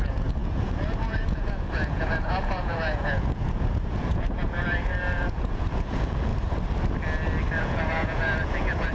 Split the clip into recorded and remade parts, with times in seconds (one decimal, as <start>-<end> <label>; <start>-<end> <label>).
0.0-6.3 remade; 6.3-7.6 recorded; 7.6-8.9 remade